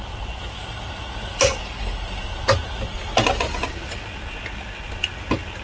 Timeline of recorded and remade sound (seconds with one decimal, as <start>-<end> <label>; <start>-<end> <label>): 0.0-5.6 recorded

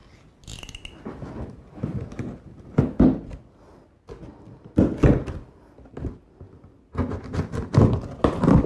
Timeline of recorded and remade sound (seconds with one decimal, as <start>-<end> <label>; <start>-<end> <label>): 0.0-8.7 recorded

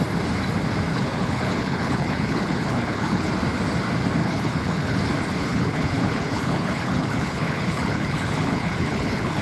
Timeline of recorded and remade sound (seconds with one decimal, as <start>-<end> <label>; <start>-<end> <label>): 0.0-0.9 recorded; 0.9-3.3 remade; 3.3-4.2 recorded; 4.2-5.0 remade; 5.0-5.4 recorded; 5.4-9.4 remade

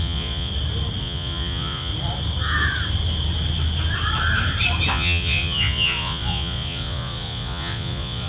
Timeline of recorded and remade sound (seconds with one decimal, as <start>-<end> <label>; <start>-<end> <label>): 0.0-0.5 remade; 0.5-1.0 recorded; 1.0-1.9 remade; 1.9-4.9 recorded; 4.9-8.3 remade

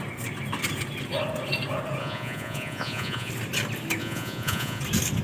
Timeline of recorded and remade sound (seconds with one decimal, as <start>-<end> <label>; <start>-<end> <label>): 0.0-2.0 recorded; 2.0-3.3 remade; 3.3-4.0 recorded; 4.0-4.8 remade; 4.8-5.2 recorded

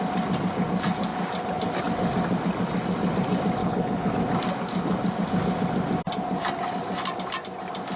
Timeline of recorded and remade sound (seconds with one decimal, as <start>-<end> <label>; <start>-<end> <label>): 0.0-3.6 recorded; 3.6-4.1 remade; 4.1-8.0 recorded

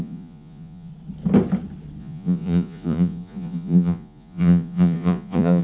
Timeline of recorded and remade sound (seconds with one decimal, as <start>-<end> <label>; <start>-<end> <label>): 0.0-0.9 remade; 0.9-2.0 recorded; 2.0-5.6 remade